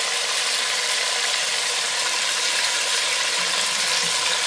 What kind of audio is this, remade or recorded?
recorded